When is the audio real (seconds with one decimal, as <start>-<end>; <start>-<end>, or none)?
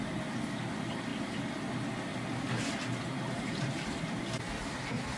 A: 0.0-1.1; 1.6-2.1; 4.2-5.2